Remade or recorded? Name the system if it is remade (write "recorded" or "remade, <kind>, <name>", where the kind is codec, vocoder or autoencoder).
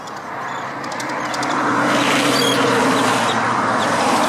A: remade, vocoder, BigVGAN v2